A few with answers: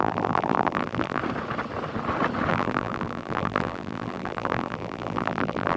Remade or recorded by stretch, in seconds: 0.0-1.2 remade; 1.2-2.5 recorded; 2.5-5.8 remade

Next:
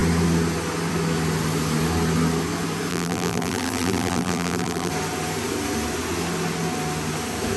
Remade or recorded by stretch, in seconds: 0.0-2.9 recorded; 2.9-4.9 remade; 4.9-7.6 recorded

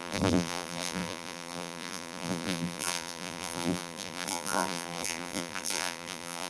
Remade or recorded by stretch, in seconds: 0.0-6.5 remade

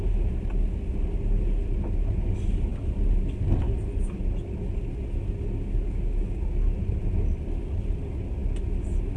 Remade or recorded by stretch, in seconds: 0.0-9.2 recorded

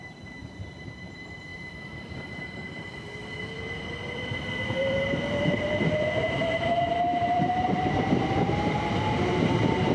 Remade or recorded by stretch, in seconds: 0.0-9.9 remade

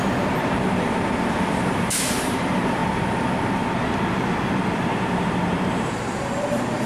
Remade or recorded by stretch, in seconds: 0.0-2.8 remade; 2.8-4.5 recorded; 4.5-6.9 remade